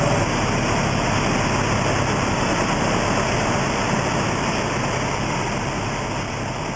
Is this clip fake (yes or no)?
no